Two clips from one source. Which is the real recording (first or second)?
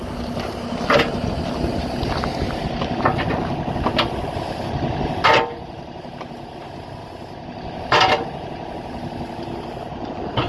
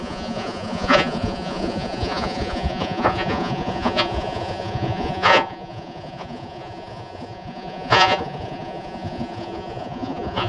first